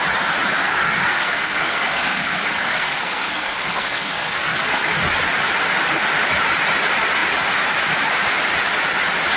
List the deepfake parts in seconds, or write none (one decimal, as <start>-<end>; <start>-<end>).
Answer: 0.6-5.0